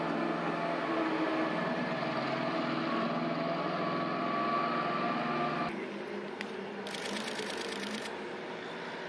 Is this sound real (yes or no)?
yes